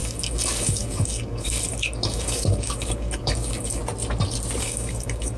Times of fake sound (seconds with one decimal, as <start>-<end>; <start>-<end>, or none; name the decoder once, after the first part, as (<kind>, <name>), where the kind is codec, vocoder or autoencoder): 0.0-3.8 (codec, DAC); 4.6-5.4